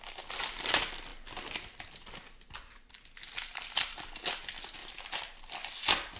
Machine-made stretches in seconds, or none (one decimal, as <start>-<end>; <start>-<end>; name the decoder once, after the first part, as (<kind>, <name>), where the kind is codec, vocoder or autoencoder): 4.8-5.4 (vocoder, BigVGAN v2)